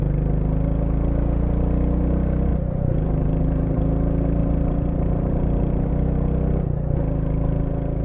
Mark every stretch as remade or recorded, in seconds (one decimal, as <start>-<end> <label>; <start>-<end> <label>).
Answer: 0.0-2.5 recorded; 2.5-3.8 remade; 3.8-4.4 recorded; 4.4-5.9 remade; 5.9-8.0 recorded